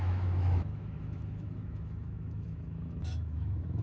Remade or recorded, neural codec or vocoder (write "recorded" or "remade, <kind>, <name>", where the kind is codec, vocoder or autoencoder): remade, autoencoder, DAC-VAE